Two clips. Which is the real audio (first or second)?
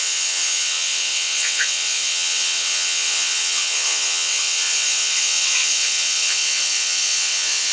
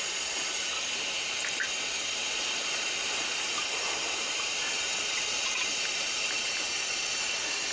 second